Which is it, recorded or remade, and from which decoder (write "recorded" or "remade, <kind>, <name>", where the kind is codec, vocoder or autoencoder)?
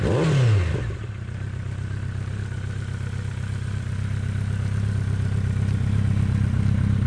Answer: recorded